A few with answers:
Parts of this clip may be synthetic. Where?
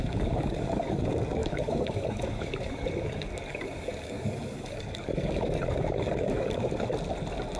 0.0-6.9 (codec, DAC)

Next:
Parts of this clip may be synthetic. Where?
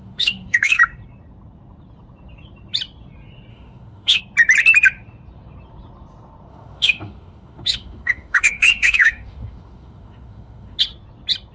0.0-0.8 (autoencoder, DAC-VAE); 3.5-4.2; 6.5-10.8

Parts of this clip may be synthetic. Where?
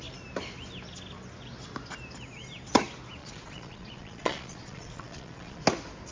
3.2-5.6 (vocoder, Vocos)